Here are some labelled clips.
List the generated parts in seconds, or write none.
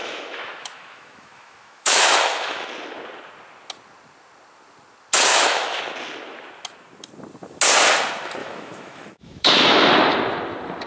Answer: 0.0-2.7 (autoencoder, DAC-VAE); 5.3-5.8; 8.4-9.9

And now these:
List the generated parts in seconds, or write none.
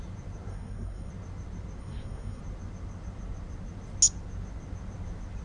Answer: 0.5-1.1 (codec, SNAC); 1.8-2.4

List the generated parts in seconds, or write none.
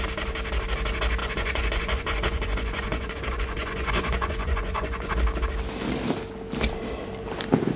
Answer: 1.2-5.1 (vocoder, Vocos)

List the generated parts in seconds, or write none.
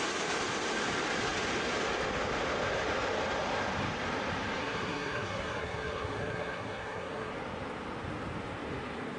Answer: 4.6-7.3 (codec, SNAC)